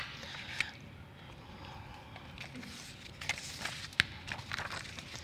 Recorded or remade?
recorded